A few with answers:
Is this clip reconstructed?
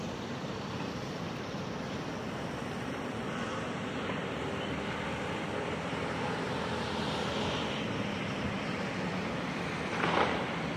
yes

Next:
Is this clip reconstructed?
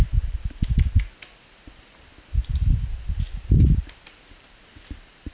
yes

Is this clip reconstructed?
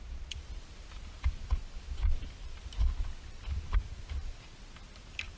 no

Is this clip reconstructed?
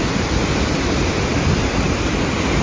yes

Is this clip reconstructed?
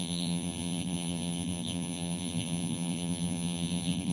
yes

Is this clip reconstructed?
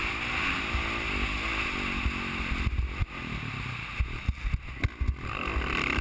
no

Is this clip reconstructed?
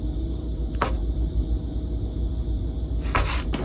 no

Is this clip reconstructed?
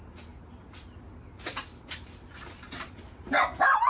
no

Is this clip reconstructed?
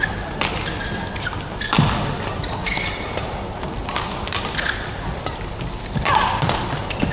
no